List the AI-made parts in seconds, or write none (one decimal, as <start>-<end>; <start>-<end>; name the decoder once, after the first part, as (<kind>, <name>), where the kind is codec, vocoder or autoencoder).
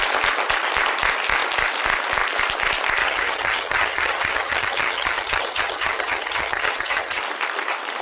3.0-7.2 (vocoder, HiFi-GAN)